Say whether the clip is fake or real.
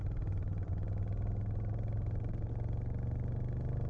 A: real